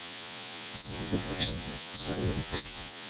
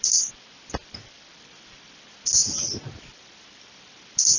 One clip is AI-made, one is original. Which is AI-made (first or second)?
first